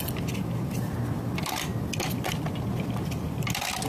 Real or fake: real